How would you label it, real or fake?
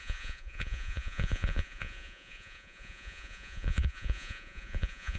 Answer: fake